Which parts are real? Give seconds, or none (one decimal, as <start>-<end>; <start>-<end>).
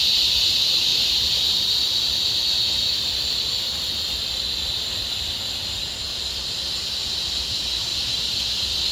0.0-0.9; 5.5-7.9